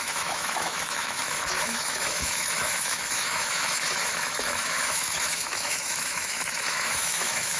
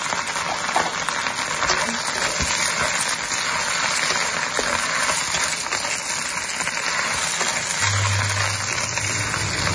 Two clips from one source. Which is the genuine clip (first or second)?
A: second